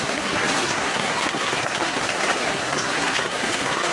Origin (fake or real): fake